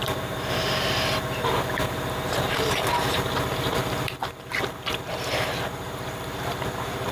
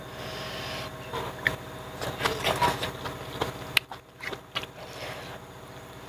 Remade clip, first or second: first